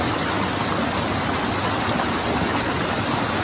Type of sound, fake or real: real